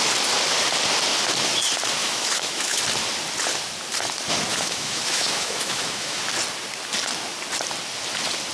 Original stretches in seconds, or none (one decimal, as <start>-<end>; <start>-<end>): 0.0-2.0; 2.8-4.5; 6.2-8.5